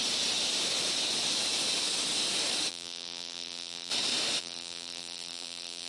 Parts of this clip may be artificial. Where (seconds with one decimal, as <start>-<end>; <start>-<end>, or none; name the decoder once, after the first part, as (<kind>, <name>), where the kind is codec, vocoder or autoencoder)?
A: 2.7-3.9 (vocoder, BigVGAN v2); 4.4-5.9